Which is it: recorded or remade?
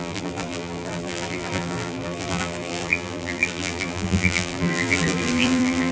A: remade